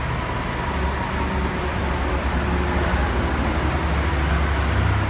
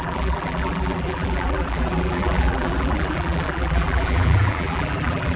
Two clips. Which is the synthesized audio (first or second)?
second